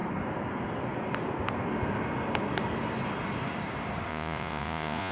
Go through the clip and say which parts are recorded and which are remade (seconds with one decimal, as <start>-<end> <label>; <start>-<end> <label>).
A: 0.0-4.1 recorded; 4.1-5.1 remade